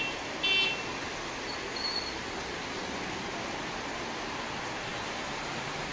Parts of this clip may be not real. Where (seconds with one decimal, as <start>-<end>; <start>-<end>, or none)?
4.9-5.9